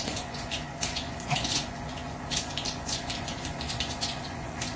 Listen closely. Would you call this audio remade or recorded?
remade